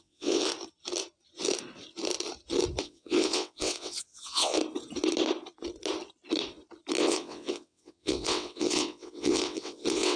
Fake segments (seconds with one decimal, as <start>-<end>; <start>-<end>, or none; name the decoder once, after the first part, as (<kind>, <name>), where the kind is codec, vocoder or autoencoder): 0.0-0.5 (vocoder, WaveNeXt); 2.8-4.6; 7.0-10.2